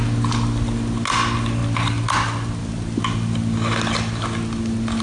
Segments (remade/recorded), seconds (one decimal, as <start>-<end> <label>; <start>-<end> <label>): 0.0-5.0 recorded